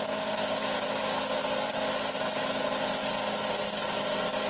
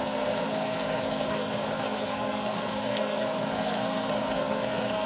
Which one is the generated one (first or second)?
second